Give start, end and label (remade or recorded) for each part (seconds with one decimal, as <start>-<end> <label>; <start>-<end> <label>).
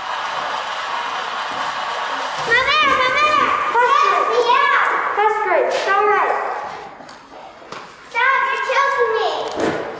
0.0-10.0 recorded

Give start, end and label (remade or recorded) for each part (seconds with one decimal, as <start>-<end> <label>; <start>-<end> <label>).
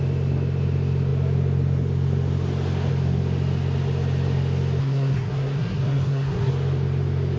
0.0-4.8 recorded; 4.8-6.5 remade; 6.5-7.4 recorded